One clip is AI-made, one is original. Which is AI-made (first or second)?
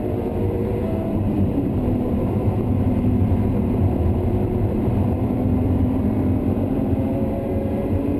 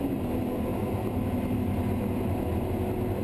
first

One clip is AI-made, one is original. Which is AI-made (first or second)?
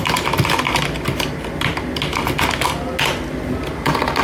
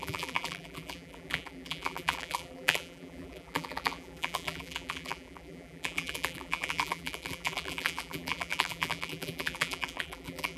second